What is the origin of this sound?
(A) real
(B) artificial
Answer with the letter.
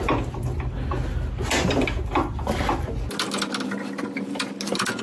A